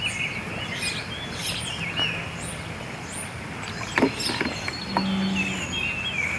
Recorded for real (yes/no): yes